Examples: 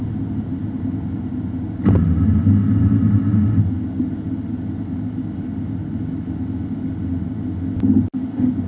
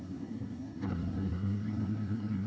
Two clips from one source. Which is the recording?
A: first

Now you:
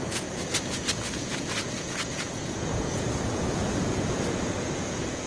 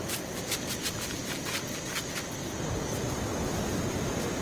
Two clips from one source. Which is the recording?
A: second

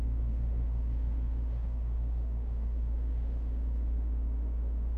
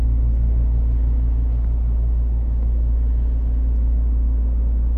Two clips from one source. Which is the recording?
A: second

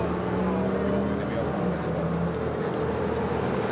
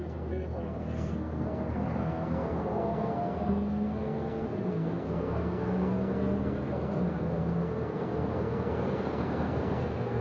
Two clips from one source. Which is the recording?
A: first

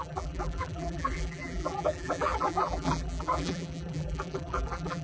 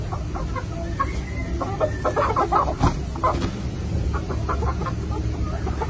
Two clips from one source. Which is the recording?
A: second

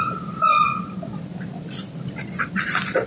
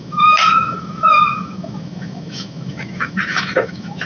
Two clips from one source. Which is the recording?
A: first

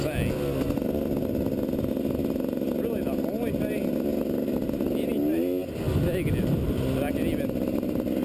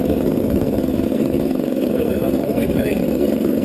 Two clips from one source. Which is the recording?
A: first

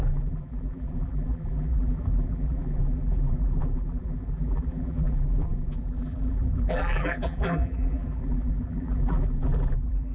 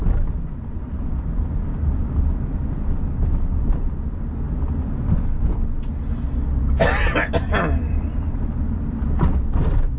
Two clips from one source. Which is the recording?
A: second